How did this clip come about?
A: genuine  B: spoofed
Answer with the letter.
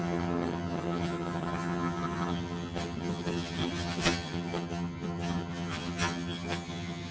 B